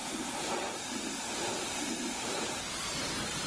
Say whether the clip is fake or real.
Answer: fake